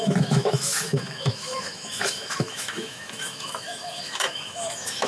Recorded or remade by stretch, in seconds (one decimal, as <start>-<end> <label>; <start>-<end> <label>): 0.0-5.1 remade